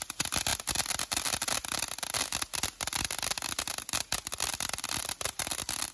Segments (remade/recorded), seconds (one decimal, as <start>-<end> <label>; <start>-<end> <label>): 0.0-5.9 recorded